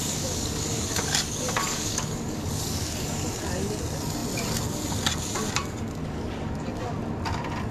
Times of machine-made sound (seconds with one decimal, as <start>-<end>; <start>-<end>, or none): 0.0-3.8; 6.0-6.8